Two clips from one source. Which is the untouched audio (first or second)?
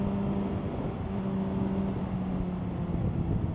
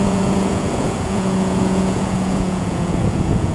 first